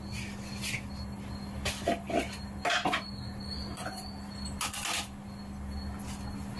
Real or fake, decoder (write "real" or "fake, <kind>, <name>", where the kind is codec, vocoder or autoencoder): real